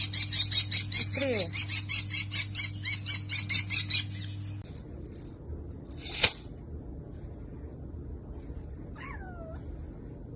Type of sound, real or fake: real